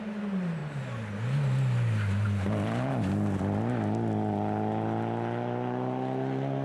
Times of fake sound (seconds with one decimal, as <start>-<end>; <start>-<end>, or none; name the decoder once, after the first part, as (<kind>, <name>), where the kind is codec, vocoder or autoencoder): none